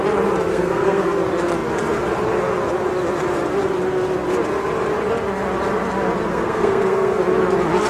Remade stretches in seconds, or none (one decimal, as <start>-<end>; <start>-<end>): 0.5-1.2; 6.3-7.2